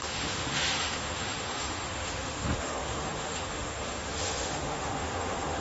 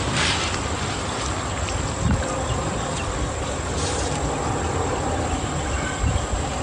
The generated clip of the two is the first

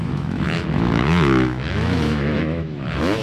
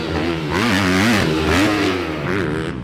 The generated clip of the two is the first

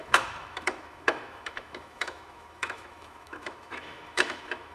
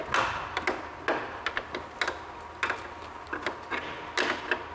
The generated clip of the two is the first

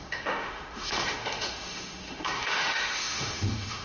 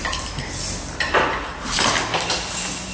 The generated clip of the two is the first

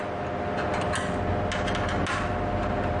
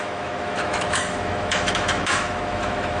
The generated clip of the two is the second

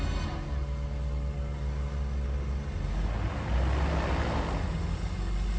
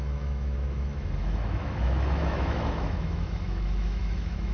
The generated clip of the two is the second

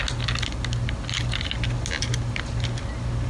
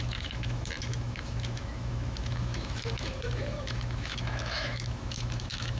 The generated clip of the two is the second